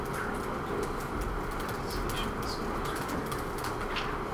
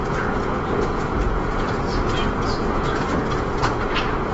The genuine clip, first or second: first